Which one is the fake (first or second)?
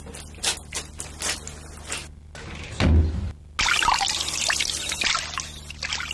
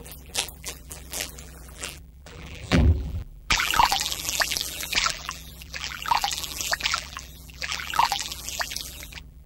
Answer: second